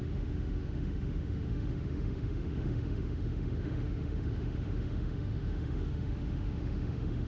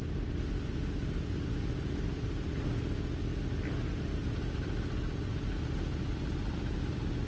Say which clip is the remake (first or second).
first